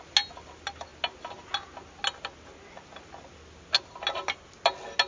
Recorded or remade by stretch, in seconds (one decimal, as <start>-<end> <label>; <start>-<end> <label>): 0.0-5.1 recorded